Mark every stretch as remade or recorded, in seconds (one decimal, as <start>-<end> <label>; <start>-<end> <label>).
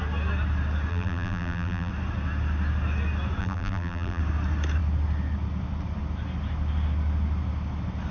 0.0-0.9 recorded; 0.9-1.9 remade; 1.9-3.4 recorded; 3.4-4.2 remade; 4.2-8.1 recorded